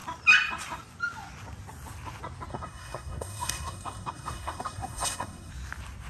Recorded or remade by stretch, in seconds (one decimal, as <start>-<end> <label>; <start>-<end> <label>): 0.0-2.5 recorded; 2.5-5.5 remade; 5.5-6.1 recorded

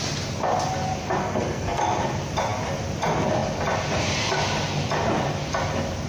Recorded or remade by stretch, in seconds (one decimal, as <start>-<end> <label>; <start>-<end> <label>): 0.0-1.2 recorded; 1.2-1.8 remade; 1.8-6.1 recorded

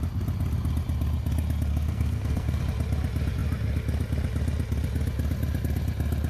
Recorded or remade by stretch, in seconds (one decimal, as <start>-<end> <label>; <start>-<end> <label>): 0.0-1.7 recorded; 1.7-2.6 remade; 2.6-6.3 recorded

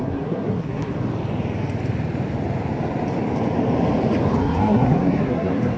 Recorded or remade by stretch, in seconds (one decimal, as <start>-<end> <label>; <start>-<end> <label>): 0.0-0.9 remade; 0.9-4.4 recorded; 4.4-5.8 remade

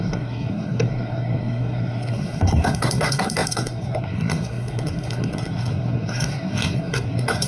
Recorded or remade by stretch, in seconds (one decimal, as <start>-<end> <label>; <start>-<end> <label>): 0.0-7.5 remade

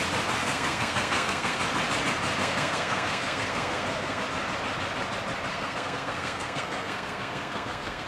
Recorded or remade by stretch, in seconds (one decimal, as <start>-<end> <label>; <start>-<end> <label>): 0.0-0.4 recorded; 0.4-1.6 remade; 1.6-2.4 recorded; 2.4-4.2 remade; 4.2-5.5 recorded; 5.5-8.1 remade

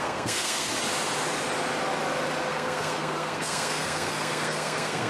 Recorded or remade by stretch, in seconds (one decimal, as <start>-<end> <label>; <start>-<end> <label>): 0.0-0.7 remade; 0.7-2.5 recorded; 2.5-5.1 remade